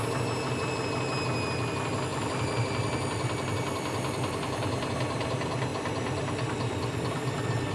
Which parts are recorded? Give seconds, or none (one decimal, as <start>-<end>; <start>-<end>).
0.0-2.1; 4.9-5.7